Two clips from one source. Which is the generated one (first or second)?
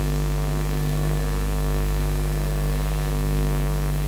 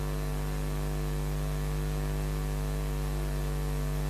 first